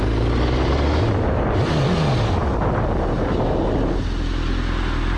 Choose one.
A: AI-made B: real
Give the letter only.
B